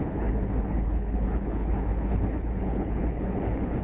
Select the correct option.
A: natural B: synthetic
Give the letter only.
B